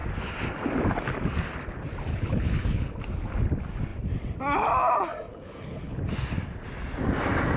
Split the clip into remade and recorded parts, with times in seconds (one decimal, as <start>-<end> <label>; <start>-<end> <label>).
0.0-2.1 recorded; 2.1-3.0 remade; 3.0-5.3 recorded; 5.3-6.0 remade; 6.0-7.6 recorded

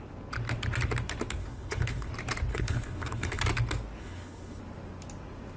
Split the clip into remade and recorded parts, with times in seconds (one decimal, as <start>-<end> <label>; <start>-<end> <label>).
0.0-1.4 recorded; 1.4-2.1 remade; 2.1-2.5 recorded; 2.5-3.4 remade; 3.4-4.0 recorded; 4.0-4.6 remade; 4.6-5.6 recorded

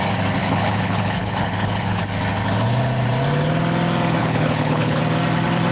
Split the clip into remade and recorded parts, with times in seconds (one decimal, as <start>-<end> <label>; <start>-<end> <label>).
0.0-0.4 recorded; 0.4-2.0 remade; 2.0-4.2 recorded; 4.2-5.0 remade; 5.0-5.7 recorded

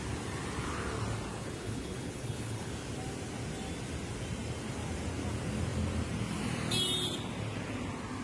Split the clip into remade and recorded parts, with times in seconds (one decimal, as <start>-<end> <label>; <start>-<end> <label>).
0.0-1.3 recorded; 1.3-2.7 remade; 2.7-8.2 recorded

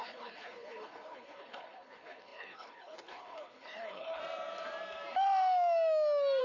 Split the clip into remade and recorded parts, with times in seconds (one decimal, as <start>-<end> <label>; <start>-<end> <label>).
0.0-4.2 remade; 4.2-6.4 recorded

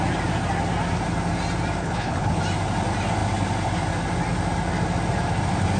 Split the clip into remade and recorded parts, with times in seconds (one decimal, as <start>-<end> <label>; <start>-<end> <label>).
0.0-1.8 recorded; 1.8-2.4 remade; 2.4-5.8 recorded

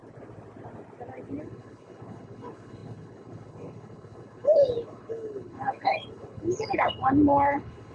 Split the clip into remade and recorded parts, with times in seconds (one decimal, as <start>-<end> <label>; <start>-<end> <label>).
0.0-1.4 recorded; 1.4-7.9 remade

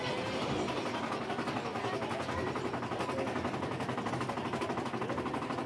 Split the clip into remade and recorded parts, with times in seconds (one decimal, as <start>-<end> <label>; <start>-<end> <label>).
0.0-5.7 recorded